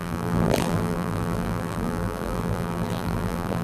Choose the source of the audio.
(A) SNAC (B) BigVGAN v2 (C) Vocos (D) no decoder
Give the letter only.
B